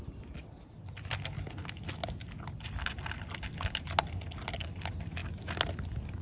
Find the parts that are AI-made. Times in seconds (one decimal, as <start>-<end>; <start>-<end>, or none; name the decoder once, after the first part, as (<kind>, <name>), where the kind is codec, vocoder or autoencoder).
none